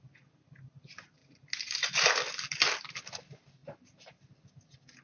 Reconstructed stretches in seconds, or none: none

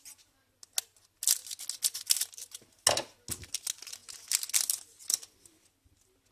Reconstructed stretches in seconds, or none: none

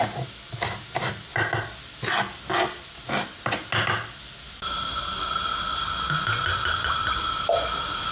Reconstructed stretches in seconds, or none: none

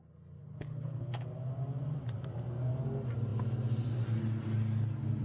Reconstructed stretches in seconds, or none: 0.4-1.1

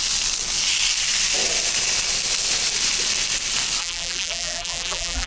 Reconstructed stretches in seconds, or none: 3.8-5.3